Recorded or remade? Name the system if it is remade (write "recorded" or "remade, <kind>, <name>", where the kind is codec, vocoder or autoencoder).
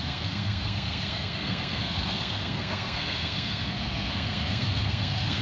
remade, codec, SNAC